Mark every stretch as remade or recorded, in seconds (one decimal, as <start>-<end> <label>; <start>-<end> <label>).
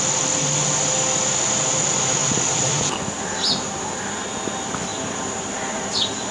0.0-6.3 recorded